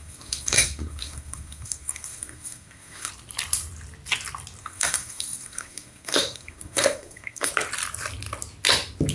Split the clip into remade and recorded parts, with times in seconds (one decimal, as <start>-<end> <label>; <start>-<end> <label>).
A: 0.0-3.1 remade; 3.1-4.6 recorded; 4.6-7.5 remade; 7.5-9.1 recorded